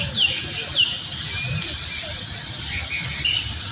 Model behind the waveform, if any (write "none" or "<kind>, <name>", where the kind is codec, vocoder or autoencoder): vocoder, BigVGAN v2